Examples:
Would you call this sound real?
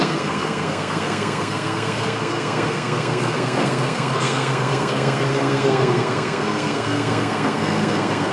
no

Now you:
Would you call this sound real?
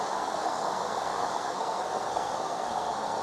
no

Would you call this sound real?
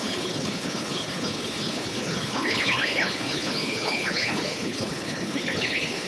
no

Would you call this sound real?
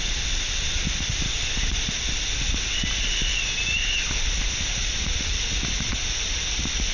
yes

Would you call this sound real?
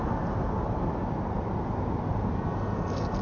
yes